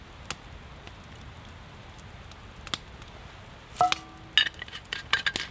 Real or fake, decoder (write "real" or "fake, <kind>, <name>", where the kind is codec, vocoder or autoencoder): real